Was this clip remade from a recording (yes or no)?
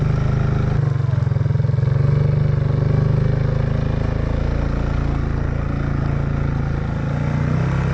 no